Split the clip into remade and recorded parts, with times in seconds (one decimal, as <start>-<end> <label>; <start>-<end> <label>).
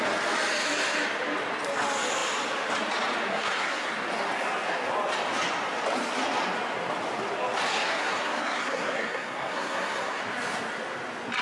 0.0-3.3 recorded; 3.3-3.9 remade; 3.9-7.7 recorded; 7.7-10.2 remade; 10.2-11.4 recorded